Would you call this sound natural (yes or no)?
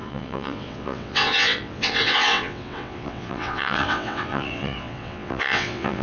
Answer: no